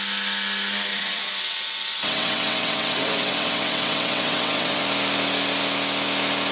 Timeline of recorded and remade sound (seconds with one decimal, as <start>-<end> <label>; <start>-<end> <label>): 0.0-0.9 recorded; 0.9-4.8 remade; 4.8-6.5 recorded